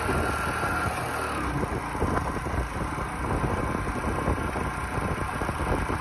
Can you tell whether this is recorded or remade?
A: recorded